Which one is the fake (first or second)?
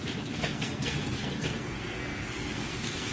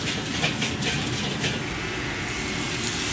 first